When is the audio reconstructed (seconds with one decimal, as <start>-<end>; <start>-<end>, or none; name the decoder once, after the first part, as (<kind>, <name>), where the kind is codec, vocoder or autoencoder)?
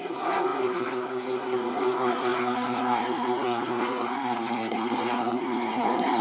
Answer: 0.0-6.2 (codec, SNAC)